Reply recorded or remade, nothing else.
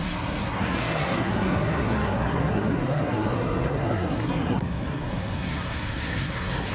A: remade